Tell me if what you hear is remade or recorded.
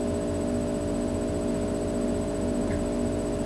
recorded